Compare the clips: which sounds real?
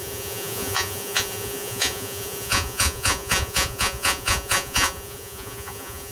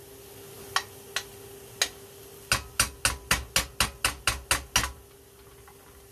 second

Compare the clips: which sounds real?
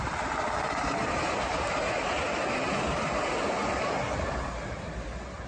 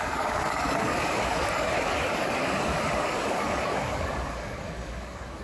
first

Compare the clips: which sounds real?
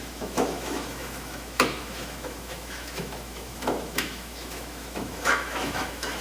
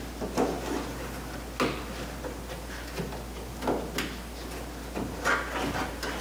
second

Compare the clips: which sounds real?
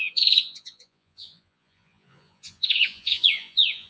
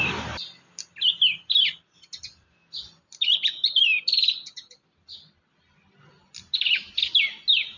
second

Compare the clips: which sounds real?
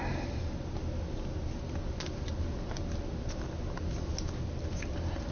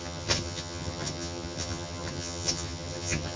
first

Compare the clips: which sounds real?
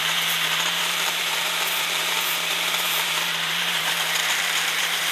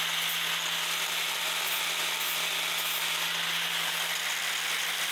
second